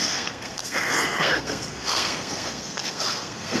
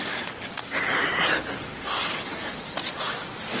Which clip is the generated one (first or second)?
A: first